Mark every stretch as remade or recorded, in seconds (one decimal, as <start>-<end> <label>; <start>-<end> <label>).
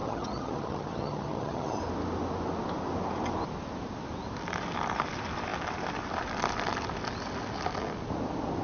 0.0-1.8 remade; 1.8-8.6 recorded